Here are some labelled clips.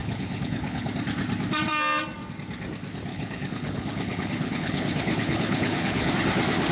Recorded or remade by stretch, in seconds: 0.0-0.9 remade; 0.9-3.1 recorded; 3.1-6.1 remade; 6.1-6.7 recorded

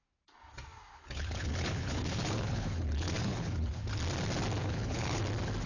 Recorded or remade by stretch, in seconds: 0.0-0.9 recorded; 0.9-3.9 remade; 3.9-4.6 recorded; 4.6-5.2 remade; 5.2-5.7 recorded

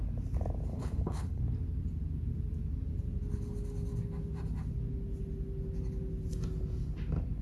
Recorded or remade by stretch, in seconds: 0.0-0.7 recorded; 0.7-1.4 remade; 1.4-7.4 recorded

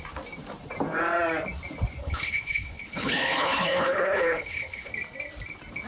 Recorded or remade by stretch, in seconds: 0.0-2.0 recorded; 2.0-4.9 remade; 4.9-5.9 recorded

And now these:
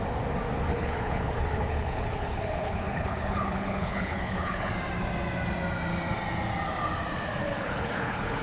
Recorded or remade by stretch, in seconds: 0.0-0.7 recorded; 0.7-4.7 remade; 4.7-7.4 recorded; 7.4-8.4 remade

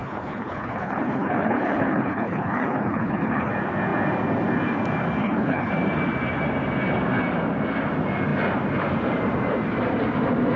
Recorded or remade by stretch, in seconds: 0.0-3.5 remade; 3.5-5.2 recorded; 5.2-5.7 remade; 5.7-10.6 recorded

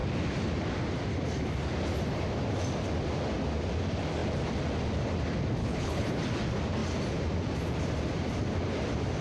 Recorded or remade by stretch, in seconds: 0.0-5.6 recorded; 5.6-6.1 remade; 6.1-9.2 recorded